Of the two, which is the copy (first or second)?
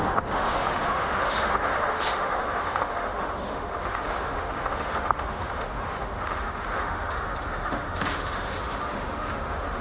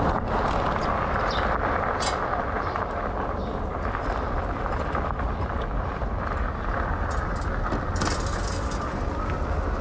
first